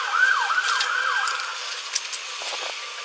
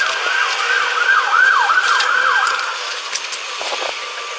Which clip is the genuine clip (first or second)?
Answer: first